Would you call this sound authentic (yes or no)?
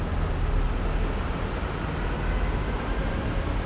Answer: yes